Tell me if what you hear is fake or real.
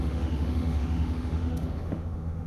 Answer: fake